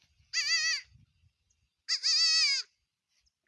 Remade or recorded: recorded